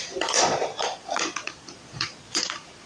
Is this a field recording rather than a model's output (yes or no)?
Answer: no